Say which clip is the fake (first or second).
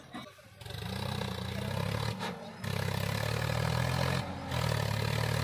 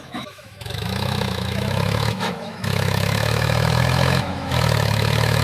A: second